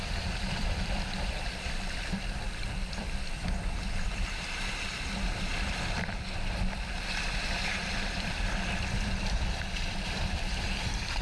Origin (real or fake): fake